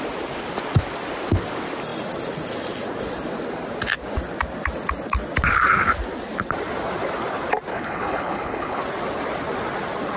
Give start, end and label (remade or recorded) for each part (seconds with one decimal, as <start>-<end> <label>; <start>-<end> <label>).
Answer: 0.0-7.7 recorded; 7.7-8.8 remade; 8.8-10.2 recorded